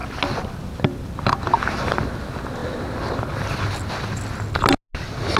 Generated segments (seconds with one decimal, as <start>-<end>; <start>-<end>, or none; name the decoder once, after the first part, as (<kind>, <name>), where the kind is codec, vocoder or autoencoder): none